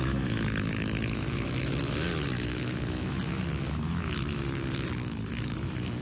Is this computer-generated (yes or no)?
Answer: yes